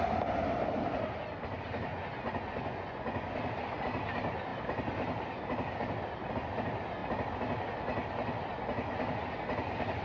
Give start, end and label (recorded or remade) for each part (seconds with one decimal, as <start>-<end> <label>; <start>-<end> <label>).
0.0-1.9 recorded; 1.9-3.3 remade; 3.3-10.0 recorded